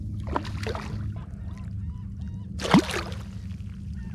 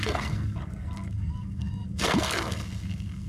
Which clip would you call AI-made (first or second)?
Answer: second